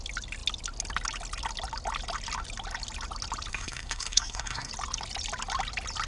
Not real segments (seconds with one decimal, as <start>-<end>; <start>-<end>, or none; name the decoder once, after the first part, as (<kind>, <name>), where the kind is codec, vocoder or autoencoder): 3.5-4.7 (codec, SNAC)